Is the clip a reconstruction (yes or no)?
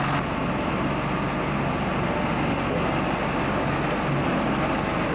no